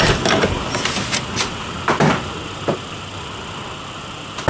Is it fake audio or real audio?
real